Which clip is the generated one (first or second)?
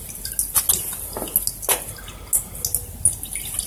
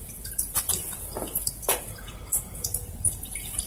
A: second